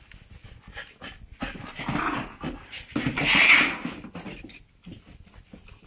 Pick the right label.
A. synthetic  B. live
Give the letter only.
B